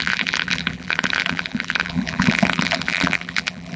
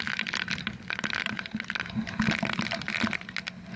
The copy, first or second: first